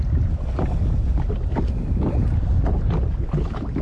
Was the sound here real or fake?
real